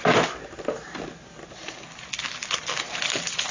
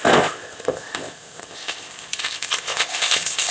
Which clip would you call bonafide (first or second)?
first